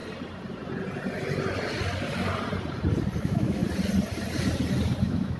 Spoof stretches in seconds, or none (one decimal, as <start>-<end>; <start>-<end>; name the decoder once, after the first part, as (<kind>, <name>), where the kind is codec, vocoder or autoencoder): 3.2-3.6 (autoencoder, DAC-VAE); 5.0-5.4

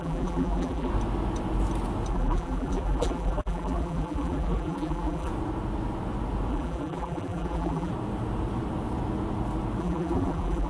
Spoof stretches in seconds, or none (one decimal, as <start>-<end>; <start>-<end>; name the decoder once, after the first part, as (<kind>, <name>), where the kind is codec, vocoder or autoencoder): 0.0-0.9 (vocoder, BigVGAN v2); 2.1-5.3; 6.5-7.9; 9.8-10.7

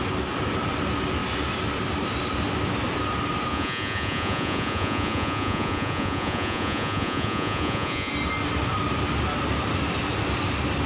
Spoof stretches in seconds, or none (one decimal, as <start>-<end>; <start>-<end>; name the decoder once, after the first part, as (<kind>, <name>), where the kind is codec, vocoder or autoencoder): 3.5-8.1 (vocoder, Vocos)